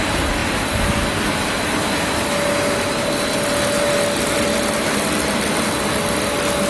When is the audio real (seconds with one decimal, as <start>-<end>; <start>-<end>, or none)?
0.0-6.7